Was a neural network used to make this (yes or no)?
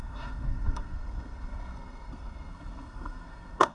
yes